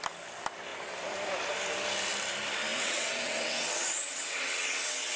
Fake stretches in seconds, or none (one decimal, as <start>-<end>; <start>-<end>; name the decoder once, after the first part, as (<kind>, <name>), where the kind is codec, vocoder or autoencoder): 2.7-5.2 (vocoder, WaveNeXt)